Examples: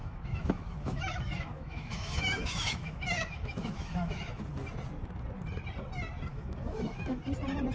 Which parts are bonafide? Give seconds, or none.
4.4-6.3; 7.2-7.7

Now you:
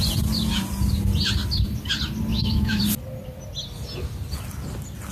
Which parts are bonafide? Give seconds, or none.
0.0-2.3; 2.8-5.1